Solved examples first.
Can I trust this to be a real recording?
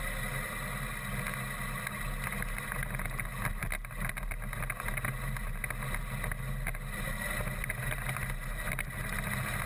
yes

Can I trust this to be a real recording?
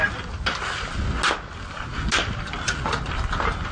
yes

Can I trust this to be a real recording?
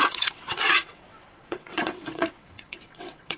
no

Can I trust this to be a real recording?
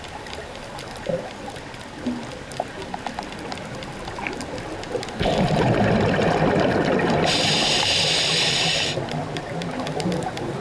yes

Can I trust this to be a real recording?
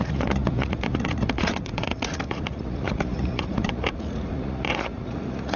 no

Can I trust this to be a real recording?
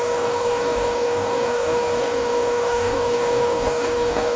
no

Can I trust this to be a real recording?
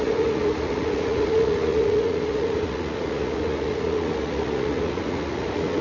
no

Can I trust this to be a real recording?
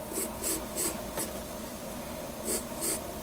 yes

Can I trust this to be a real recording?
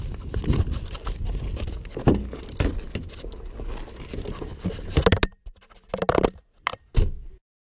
yes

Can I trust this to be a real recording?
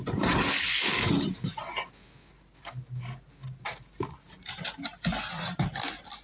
yes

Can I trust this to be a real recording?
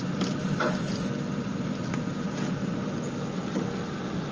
yes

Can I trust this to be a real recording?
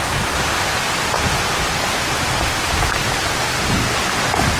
yes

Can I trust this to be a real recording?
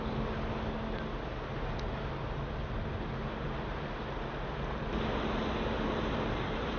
yes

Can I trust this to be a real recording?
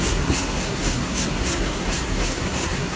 no